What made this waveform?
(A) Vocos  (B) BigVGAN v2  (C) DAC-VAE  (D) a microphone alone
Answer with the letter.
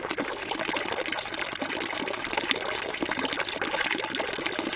D